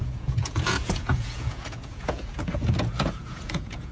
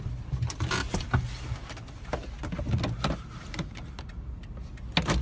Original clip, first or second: second